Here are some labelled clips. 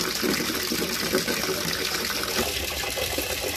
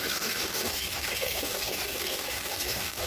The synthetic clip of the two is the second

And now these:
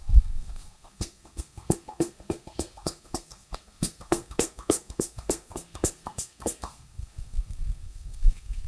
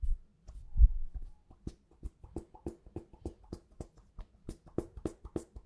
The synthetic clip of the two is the first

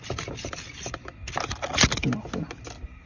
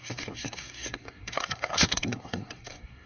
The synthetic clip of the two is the second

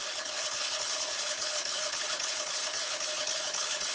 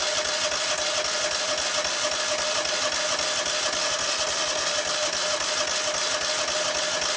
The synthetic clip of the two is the first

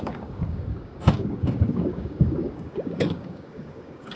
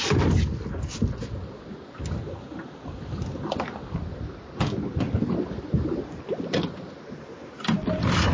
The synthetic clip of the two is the first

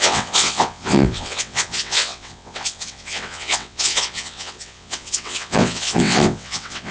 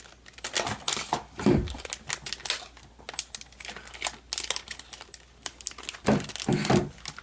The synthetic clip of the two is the first